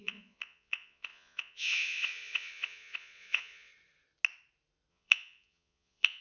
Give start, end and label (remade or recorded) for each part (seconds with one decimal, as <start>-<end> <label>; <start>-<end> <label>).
0.0-3.7 remade; 3.7-4.9 recorded; 4.9-6.2 remade